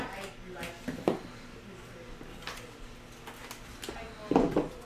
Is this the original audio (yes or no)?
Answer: yes